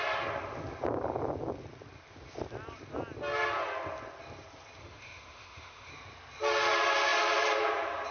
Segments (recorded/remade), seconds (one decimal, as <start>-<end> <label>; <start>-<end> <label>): 0.0-4.8 recorded; 4.8-5.9 remade; 5.9-8.1 recorded